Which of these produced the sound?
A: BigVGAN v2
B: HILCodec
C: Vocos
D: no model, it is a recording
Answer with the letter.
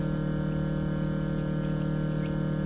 D